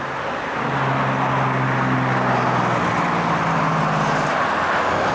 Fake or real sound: real